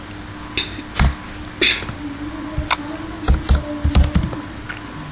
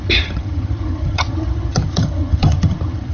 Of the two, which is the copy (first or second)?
second